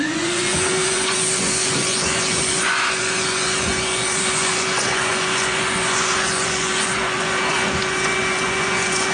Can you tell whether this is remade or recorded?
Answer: remade